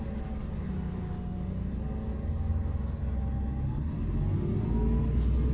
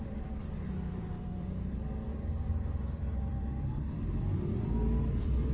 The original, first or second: first